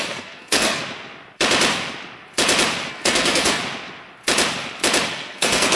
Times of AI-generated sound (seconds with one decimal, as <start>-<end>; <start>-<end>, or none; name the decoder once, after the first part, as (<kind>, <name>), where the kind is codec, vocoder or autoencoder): 0.0-0.8 (codec, SNAC); 2.9-3.6; 5.1-5.8